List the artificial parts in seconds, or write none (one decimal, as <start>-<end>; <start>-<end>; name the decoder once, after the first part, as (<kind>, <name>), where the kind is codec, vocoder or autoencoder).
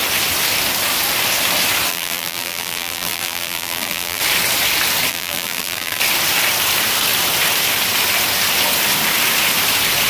1.9-4.2 (vocoder, BigVGAN v2); 5.1-6.0